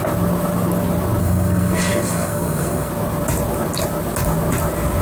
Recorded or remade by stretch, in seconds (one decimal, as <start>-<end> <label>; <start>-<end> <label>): 0.0-1.2 recorded; 1.2-2.9 remade; 2.9-5.0 recorded